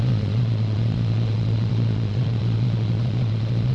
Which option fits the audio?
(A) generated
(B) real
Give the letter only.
A